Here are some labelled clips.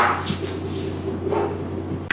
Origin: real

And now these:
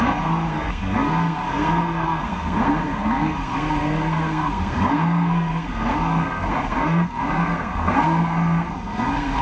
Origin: fake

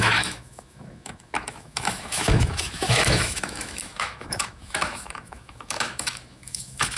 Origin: fake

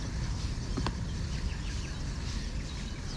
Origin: real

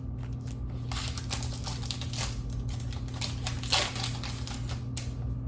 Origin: real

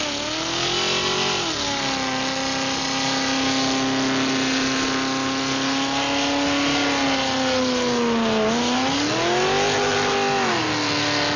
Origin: real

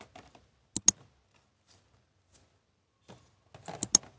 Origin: real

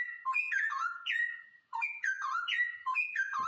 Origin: fake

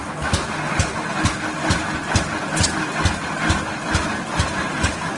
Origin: real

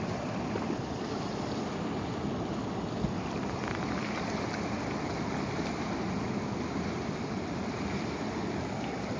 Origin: real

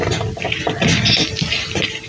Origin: real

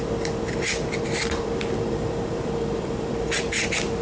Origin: fake